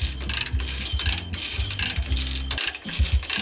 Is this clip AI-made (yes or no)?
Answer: no